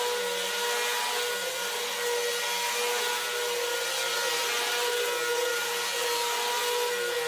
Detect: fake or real real